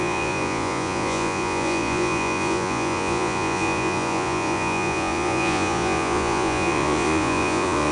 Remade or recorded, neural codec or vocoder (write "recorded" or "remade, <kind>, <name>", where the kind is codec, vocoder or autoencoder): remade, vocoder, Vocos